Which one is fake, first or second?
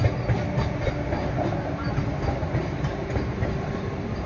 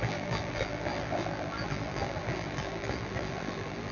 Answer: second